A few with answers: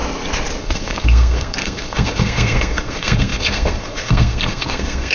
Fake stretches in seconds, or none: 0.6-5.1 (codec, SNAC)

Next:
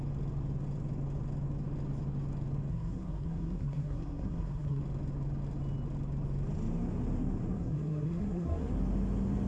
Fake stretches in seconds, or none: 2.7-4.8 (codec, SNAC); 7.5-8.7

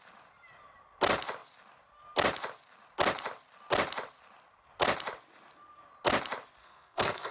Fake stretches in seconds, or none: 6.6-7.3 (codec, SNAC)